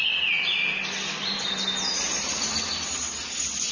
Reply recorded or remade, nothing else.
recorded